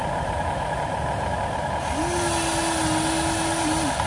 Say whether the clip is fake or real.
real